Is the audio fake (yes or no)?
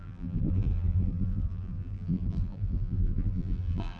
yes